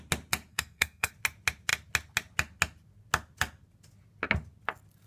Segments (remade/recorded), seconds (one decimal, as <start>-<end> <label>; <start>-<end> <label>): 0.0-0.5 recorded; 0.5-1.1 remade; 1.1-5.1 recorded